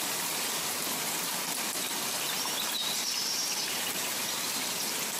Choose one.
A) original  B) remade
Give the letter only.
B